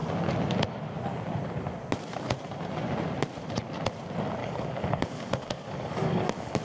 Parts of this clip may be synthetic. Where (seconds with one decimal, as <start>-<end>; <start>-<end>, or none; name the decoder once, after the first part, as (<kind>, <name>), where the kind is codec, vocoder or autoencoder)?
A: 4.4-6.6 (codec, DAC)